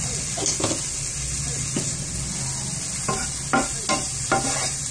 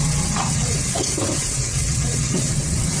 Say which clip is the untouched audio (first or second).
first